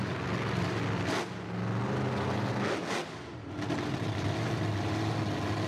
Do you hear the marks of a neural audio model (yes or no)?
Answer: no